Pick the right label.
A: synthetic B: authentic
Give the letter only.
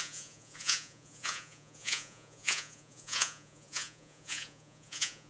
A